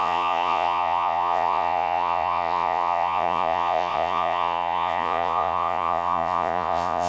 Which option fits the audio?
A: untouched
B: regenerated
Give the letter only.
B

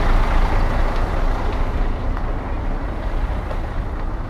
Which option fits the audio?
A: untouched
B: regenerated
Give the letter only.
A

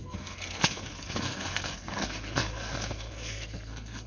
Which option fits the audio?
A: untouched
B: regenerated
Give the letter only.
B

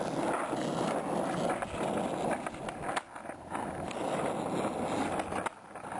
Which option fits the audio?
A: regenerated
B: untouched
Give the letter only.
B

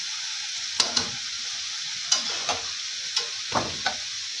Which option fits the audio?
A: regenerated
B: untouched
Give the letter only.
A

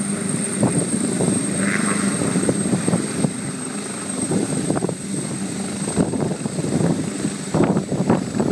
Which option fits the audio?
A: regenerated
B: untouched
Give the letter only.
A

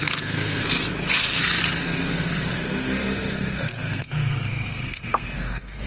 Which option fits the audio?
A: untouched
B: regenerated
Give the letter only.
B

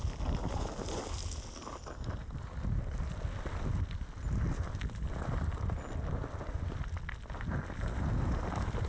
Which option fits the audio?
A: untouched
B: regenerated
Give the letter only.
A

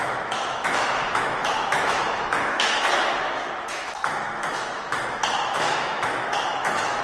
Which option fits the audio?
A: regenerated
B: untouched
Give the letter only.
A